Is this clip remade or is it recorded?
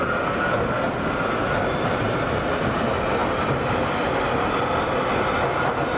recorded